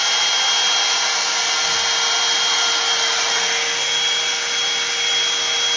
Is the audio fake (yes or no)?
no